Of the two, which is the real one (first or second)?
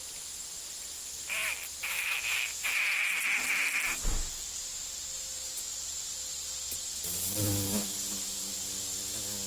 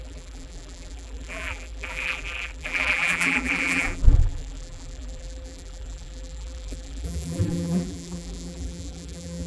first